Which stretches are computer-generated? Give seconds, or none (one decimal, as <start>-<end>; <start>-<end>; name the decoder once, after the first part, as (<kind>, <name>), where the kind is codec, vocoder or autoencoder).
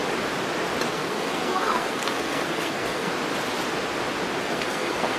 0.9-3.1 (codec, SNAC); 4.4-5.2